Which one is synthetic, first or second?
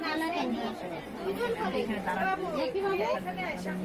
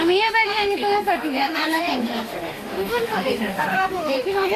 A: second